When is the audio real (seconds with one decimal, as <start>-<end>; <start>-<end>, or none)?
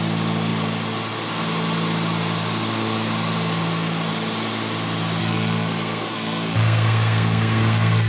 0.0-5.2